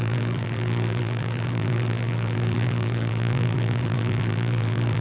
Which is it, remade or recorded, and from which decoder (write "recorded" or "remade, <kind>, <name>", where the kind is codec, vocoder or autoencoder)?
remade, vocoder, BigVGAN v2